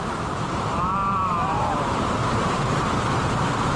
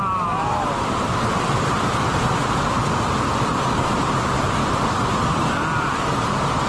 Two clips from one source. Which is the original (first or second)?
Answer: second